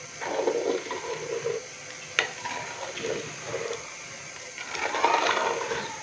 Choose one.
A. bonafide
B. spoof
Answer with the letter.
A